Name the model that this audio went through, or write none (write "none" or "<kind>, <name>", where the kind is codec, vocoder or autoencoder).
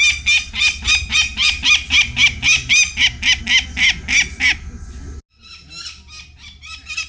none